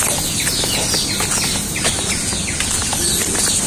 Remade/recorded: recorded